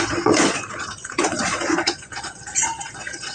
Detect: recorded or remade remade